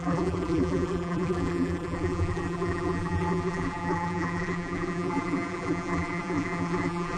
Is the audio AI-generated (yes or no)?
yes